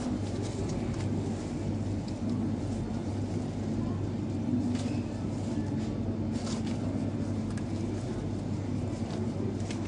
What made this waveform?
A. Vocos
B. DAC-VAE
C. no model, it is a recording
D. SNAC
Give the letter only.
C